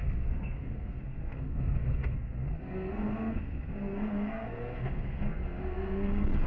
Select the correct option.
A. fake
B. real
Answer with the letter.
A